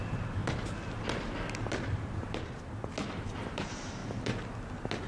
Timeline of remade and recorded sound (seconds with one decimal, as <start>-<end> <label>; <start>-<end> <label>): 0.0-0.4 remade; 0.4-3.5 recorded; 3.5-4.0 remade; 4.0-5.1 recorded